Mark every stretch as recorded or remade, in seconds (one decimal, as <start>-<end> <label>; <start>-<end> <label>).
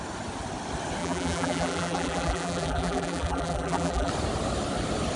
0.0-1.0 recorded; 1.0-4.1 remade; 4.1-5.2 recorded